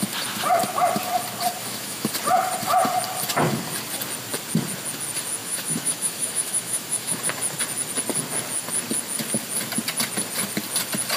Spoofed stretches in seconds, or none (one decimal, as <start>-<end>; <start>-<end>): 1.6-2.1; 5.4-7.2

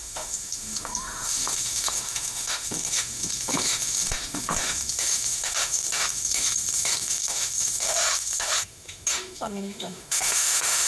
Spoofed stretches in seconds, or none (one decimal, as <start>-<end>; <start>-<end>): 0.0-10.9

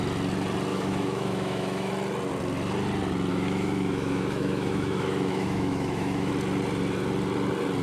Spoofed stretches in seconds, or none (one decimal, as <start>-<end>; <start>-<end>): 0.7-1.9; 3.3-6.3